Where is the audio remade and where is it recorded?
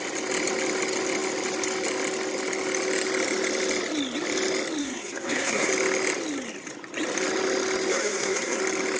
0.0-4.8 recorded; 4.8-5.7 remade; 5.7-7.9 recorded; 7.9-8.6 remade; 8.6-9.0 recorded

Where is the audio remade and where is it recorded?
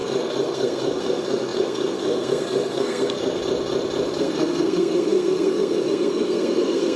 0.0-3.4 remade; 3.4-4.2 recorded; 4.2-7.0 remade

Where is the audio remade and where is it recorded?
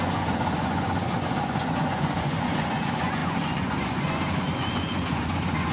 0.0-5.7 remade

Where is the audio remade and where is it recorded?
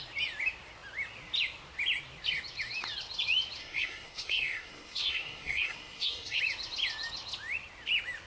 0.0-3.6 recorded; 3.6-6.4 remade; 6.4-8.3 recorded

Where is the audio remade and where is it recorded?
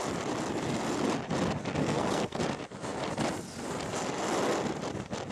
0.0-1.8 recorded; 1.8-2.4 remade; 2.4-5.3 recorded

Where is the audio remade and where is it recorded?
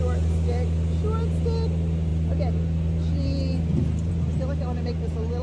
0.0-5.4 recorded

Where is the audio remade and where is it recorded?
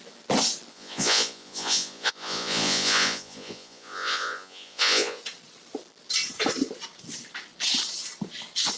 0.0-0.7 recorded; 0.7-5.2 remade; 5.2-8.8 recorded